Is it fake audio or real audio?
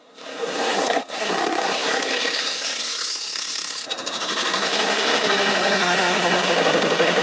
fake